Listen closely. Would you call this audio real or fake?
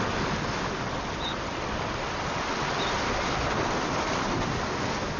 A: real